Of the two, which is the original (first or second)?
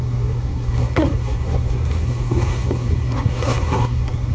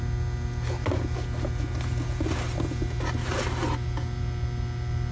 second